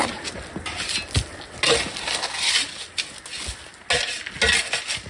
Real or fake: real